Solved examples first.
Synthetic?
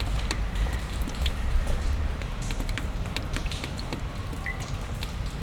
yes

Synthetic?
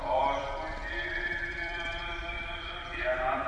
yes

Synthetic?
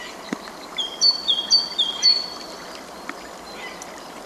yes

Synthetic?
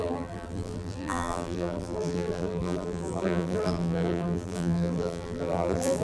yes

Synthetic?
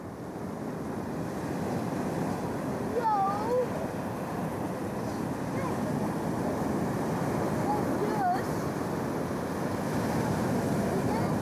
no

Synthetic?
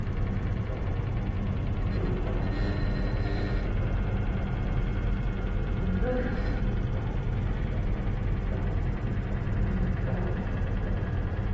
no